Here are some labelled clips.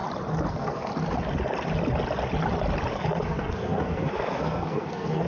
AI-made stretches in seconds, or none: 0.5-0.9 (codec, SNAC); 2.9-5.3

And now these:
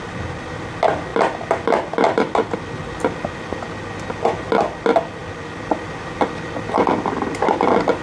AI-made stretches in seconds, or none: none

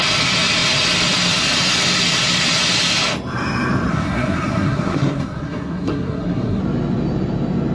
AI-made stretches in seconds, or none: 3.9-6.6 (codec, SNAC)

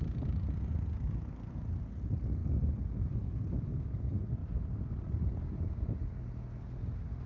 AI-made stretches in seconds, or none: none

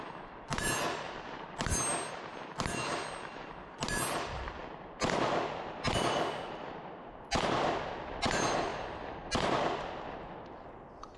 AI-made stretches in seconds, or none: none

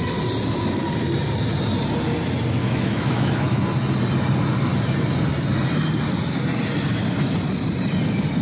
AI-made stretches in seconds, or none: 2.6-3.6 (autoencoder, DAC-VAE)

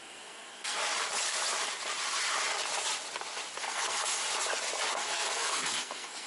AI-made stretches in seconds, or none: 0.0-0.8 (codec, SNAC); 3.6-4.2; 4.9-6.3